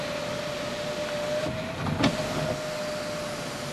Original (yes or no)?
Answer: yes